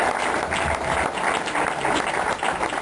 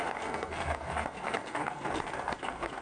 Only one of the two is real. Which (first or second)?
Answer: first